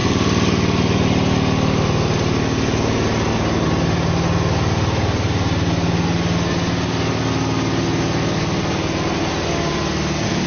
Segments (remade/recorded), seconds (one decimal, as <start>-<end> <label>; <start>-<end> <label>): 0.0-10.5 recorded